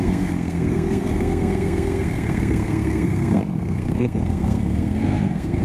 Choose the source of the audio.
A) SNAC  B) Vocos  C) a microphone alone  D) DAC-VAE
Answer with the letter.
A